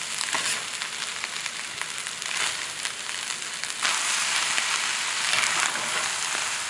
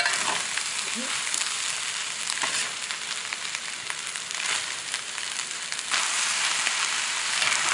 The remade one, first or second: second